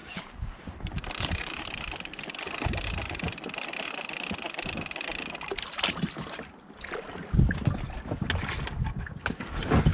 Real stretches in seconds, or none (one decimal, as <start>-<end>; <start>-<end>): 0.6-8.8; 9.5-9.9